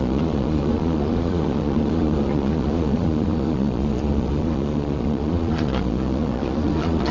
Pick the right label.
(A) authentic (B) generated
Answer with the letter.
B